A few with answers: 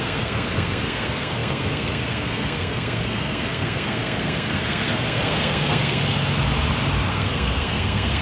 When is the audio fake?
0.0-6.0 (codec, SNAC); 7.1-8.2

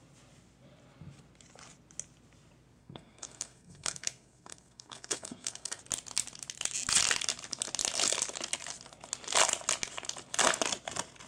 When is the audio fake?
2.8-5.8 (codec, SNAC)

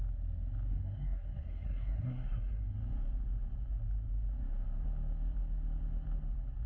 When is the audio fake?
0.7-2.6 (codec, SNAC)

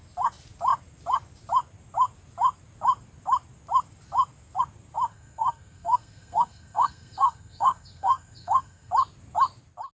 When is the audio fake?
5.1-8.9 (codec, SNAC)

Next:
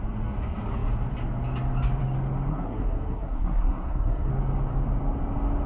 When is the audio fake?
2.5-4.3 (codec, SNAC)

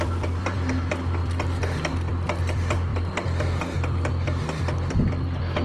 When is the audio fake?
none

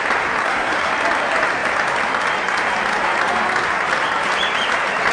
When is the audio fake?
0.4-0.9 (codec, SNAC)

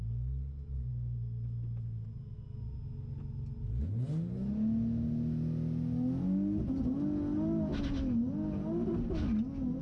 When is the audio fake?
none